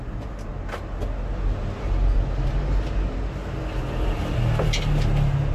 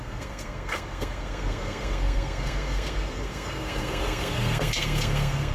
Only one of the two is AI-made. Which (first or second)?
second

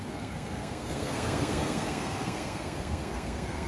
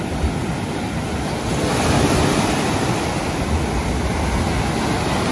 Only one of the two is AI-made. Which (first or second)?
first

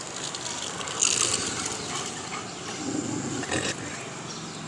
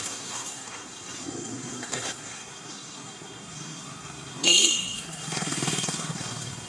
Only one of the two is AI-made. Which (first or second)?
second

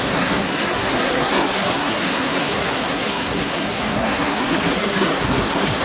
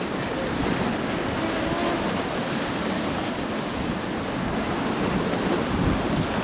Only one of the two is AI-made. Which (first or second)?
first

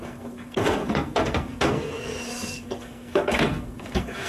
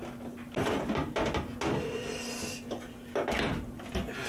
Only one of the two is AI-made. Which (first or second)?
first